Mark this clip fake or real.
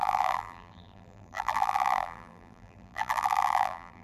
fake